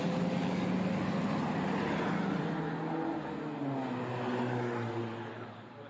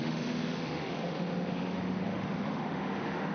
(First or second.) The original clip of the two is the first